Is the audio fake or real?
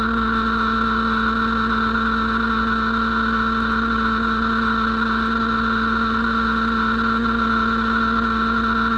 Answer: real